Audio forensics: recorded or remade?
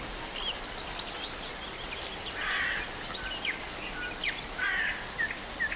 recorded